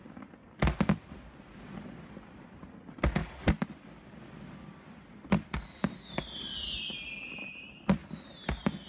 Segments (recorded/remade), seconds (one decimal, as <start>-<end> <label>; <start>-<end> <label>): 0.0-8.9 recorded